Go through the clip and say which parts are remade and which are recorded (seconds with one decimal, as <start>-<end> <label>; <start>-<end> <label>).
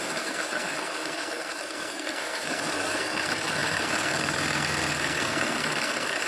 0.0-6.3 remade